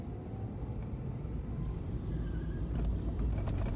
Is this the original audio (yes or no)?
yes